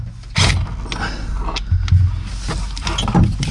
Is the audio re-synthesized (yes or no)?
no